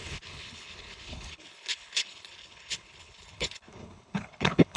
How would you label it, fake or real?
fake